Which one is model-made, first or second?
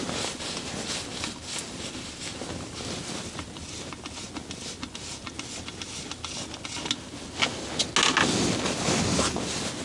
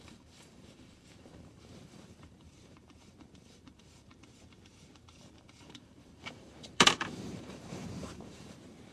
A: second